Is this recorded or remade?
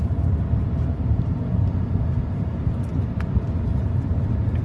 remade